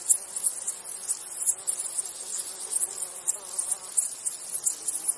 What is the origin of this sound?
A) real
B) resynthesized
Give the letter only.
A